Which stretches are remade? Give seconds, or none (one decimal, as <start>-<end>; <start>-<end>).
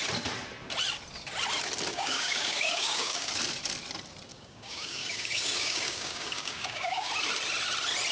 1.9-3.3; 4.3-7.1